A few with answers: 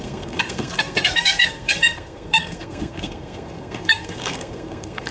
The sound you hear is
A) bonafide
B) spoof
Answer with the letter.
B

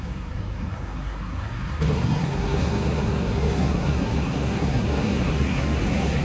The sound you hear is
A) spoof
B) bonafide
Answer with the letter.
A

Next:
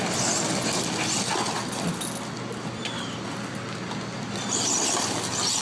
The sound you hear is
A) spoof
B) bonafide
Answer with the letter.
B